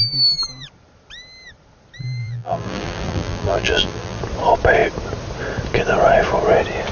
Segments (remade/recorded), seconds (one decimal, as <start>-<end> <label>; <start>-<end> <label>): 0.0-2.2 recorded; 2.2-4.2 remade; 4.2-6.9 recorded